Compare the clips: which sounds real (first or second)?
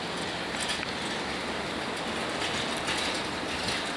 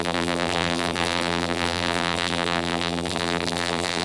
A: first